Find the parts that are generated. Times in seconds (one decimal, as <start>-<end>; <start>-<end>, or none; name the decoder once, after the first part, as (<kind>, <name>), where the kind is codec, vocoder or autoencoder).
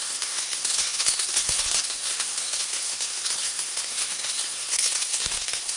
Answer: 0.0-5.8 (codec, SNAC)